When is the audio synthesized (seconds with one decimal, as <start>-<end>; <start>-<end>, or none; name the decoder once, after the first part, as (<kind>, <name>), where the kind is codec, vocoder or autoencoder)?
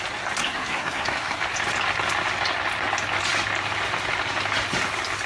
0.4-1.4 (codec, SNAC)